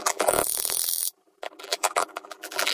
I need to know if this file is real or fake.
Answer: fake